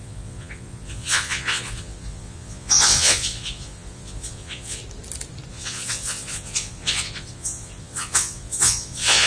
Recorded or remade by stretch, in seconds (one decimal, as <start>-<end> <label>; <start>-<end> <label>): 0.0-4.8 remade; 4.8-5.5 recorded; 5.5-9.3 remade